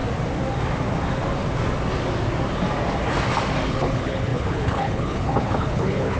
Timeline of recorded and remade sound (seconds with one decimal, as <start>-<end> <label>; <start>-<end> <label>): 0.0-3.7 recorded; 3.7-6.2 remade